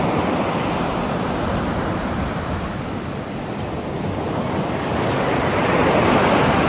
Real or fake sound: real